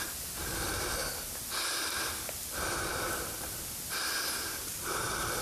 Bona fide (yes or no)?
yes